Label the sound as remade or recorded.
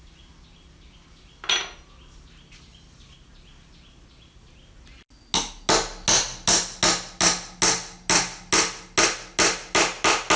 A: recorded